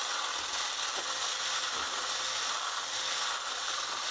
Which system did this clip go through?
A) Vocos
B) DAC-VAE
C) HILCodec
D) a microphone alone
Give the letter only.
D